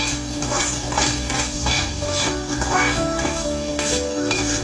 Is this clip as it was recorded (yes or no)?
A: no